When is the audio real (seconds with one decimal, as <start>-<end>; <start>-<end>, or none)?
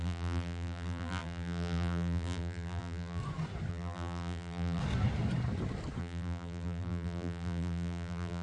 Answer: 3.2-3.7; 4.8-6.0